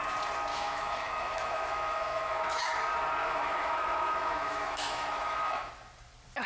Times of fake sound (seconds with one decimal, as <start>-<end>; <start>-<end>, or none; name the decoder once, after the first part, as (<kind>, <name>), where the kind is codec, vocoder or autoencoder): 0.5-2.7 (autoencoder, DAC-VAE); 3.2-5.7